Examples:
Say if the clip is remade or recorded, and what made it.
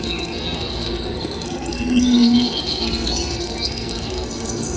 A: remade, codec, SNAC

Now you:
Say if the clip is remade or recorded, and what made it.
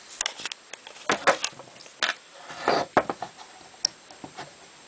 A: recorded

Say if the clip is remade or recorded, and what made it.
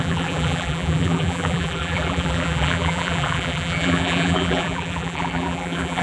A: remade, vocoder, BigVGAN v2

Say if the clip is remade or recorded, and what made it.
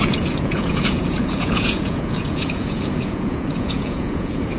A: remade, vocoder, Vocos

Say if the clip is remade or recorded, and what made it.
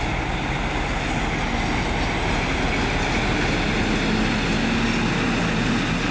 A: recorded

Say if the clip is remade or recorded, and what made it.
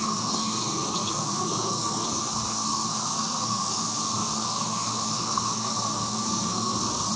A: remade, codec, SNAC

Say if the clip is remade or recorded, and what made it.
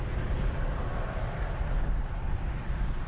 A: remade, vocoder, BigVGAN v2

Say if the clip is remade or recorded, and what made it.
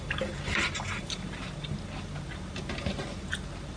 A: remade, vocoder, BigVGAN v2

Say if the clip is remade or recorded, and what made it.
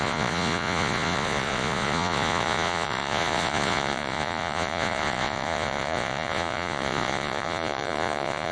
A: remade, vocoder, Vocos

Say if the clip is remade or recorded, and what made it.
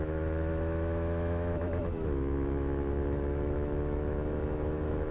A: remade, autoencoder, DAC-VAE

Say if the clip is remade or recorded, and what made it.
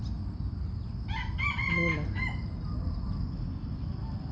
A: recorded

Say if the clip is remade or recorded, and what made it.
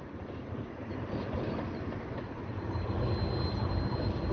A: recorded